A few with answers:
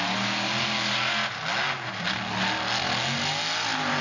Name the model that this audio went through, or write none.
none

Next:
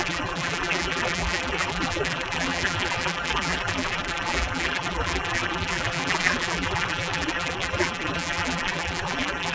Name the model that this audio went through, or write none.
vocoder, BigVGAN v2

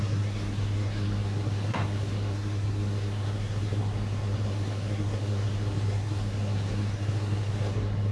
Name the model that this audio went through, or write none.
codec, SNAC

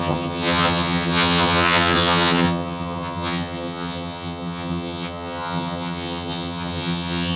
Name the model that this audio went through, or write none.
vocoder, HiFi-GAN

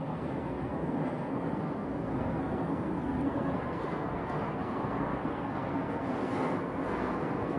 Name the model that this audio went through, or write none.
codec, SNAC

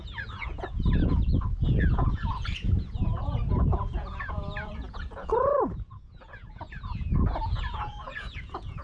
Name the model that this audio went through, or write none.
vocoder, Vocos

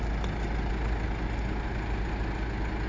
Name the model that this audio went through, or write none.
none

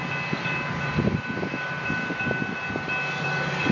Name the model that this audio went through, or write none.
none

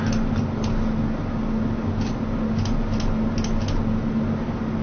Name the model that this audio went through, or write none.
none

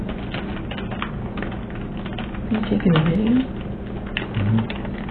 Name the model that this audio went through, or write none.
none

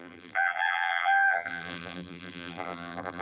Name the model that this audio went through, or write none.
vocoder, BigVGAN v2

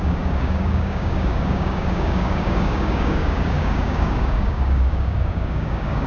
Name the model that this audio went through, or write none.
codec, DAC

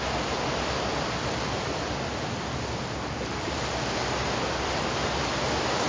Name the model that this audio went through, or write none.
none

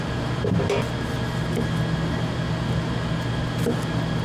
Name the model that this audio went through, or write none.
none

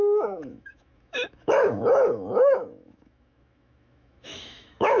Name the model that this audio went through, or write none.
autoencoder, DAC-VAE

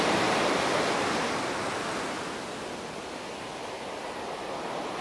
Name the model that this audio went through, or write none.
none